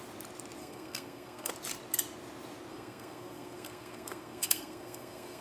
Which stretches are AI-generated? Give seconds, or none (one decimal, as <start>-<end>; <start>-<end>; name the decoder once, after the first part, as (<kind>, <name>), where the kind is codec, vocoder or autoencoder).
0.6-1.5 (codec, SNAC); 2.7-5.4